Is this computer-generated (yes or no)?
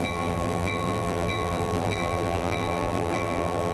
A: yes